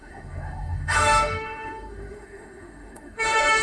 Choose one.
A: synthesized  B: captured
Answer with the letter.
A